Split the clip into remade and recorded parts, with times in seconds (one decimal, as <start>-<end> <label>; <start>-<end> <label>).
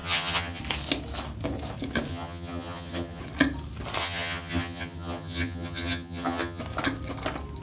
0.0-0.6 remade; 0.6-2.1 recorded; 2.1-3.2 remade; 3.2-4.0 recorded; 4.0-6.6 remade; 6.6-7.6 recorded